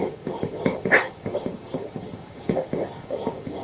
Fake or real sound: fake